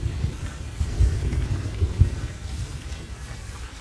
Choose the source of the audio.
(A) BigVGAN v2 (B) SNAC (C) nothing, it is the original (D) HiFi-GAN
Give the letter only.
B